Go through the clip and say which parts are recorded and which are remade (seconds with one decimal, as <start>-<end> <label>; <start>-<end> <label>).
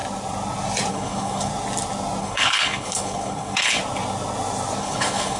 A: 0.0-0.9 recorded; 0.9-1.5 remade; 1.5-2.2 recorded; 2.2-3.8 remade; 3.8-4.8 recorded; 4.8-5.4 remade